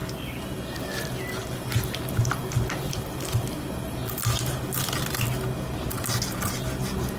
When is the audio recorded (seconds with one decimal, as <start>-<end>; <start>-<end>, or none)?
0.0-7.2